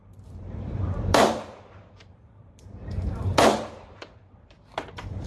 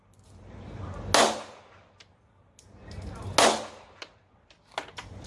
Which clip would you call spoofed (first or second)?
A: first